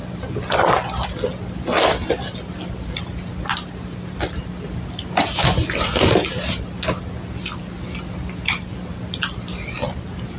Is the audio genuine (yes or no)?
yes